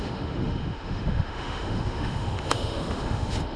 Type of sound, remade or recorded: remade